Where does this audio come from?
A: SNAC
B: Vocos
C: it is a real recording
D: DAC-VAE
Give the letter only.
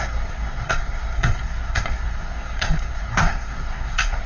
A